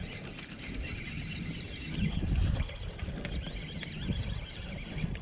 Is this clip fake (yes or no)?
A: no